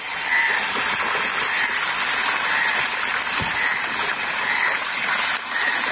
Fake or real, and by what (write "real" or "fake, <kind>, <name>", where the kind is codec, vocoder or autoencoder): real